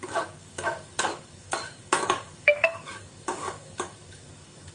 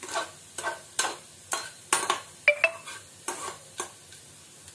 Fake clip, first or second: first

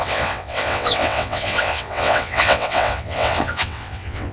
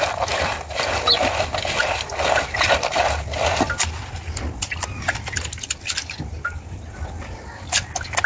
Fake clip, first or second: first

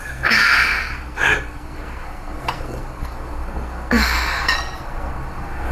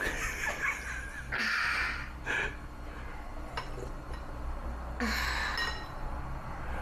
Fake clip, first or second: first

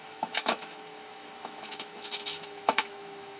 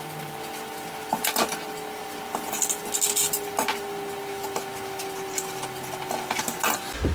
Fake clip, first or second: first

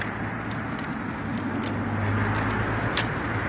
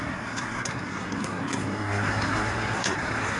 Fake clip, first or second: second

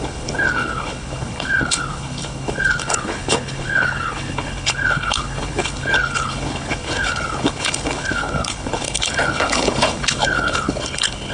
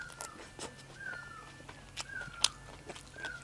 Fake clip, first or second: first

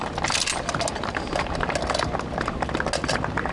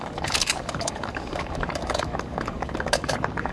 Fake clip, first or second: second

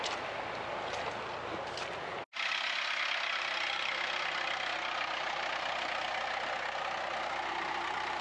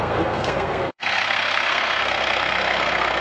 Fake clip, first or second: second